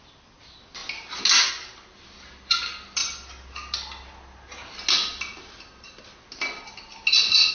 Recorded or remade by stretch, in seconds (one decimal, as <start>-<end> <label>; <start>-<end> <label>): 0.0-7.5 recorded